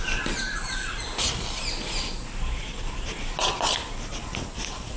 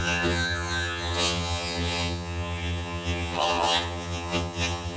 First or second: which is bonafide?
first